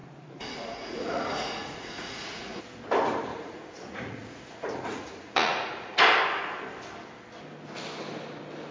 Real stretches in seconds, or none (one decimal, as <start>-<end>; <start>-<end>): 2.6-3.3; 6.0-8.7